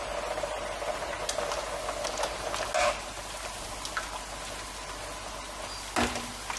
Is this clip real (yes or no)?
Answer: yes